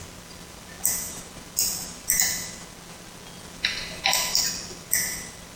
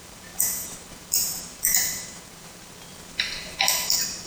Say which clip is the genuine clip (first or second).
first